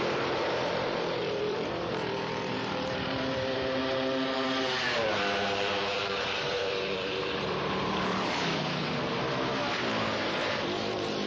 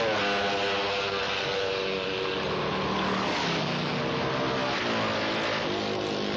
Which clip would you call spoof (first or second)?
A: first